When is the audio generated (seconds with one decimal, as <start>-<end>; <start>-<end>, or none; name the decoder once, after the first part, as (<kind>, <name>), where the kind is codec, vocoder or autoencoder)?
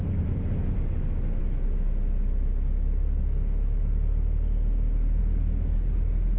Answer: none